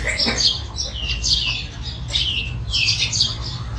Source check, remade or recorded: recorded